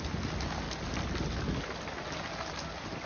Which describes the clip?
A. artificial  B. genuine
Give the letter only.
B